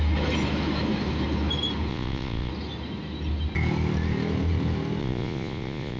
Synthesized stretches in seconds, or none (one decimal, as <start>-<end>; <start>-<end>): 1.9-2.5; 5.0-6.0